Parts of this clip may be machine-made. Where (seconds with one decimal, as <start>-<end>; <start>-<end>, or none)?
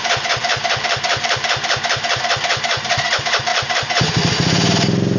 0.0-3.1; 3.5-4.1